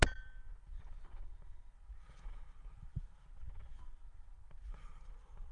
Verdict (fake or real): real